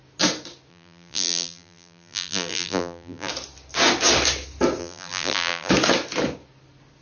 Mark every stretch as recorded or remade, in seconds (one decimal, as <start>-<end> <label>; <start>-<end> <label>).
0.0-0.7 recorded; 0.7-3.3 remade; 3.3-4.8 recorded; 4.8-5.7 remade; 5.7-7.0 recorded